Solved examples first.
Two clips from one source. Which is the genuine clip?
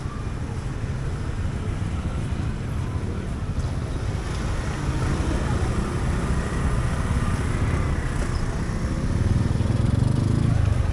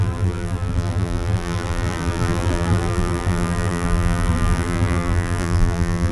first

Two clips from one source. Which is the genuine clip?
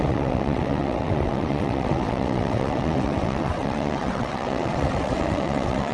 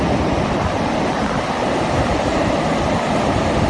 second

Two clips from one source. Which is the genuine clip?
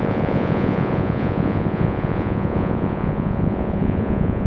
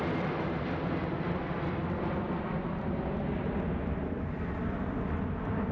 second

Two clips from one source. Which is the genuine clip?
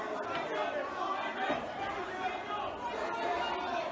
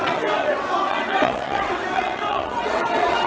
first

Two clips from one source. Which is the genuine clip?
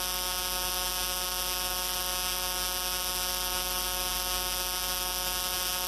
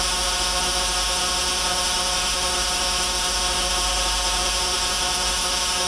first